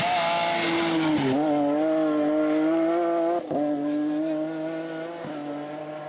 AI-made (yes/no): no